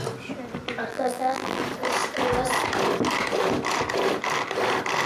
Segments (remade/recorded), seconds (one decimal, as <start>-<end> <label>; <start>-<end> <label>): 0.0-0.9 recorded; 0.9-1.6 remade; 1.6-5.1 recorded